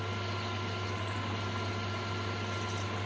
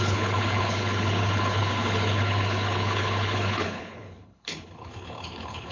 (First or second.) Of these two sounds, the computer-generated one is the second